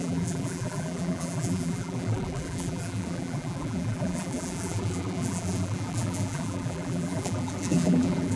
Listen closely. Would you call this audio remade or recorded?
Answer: remade